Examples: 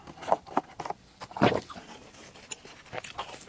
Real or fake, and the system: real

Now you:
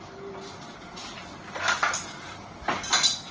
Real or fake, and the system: real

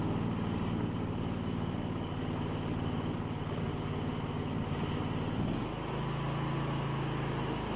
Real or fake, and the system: real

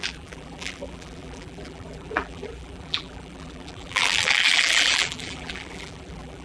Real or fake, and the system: fake, vocoder, BigVGAN v2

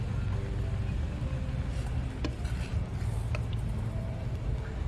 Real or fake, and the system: real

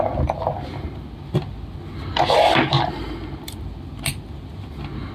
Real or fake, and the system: real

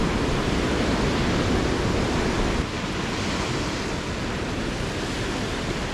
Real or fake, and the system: real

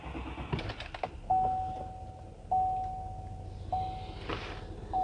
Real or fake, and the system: real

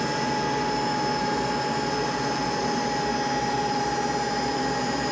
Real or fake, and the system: real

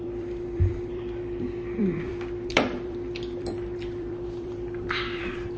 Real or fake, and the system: fake, vocoder, BigVGAN v2